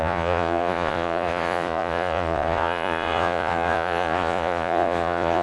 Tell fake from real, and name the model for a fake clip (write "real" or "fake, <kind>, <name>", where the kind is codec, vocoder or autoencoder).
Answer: fake, vocoder, Vocos